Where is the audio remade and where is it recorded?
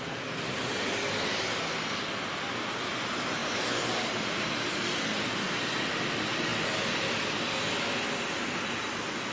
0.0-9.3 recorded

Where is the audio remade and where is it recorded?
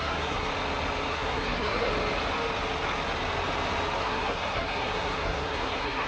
0.0-0.5 remade; 0.5-1.1 recorded; 1.1-1.9 remade; 1.9-4.0 recorded; 4.0-6.1 remade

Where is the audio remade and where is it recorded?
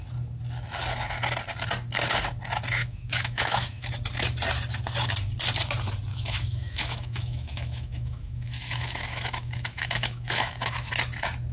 0.0-2.8 recorded; 2.8-3.9 remade; 3.9-6.1 recorded; 6.1-10.9 remade; 10.9-11.5 recorded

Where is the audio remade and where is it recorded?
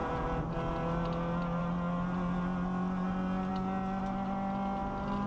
0.0-5.3 recorded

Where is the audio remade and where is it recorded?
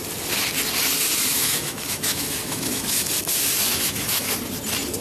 0.0-1.3 recorded; 1.3-3.1 remade; 3.1-3.7 recorded; 3.7-4.3 remade; 4.3-5.0 recorded